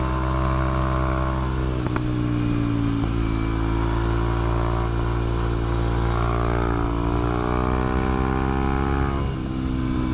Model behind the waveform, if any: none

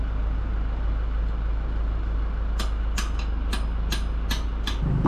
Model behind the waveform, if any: none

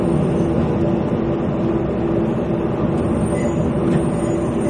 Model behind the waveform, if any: none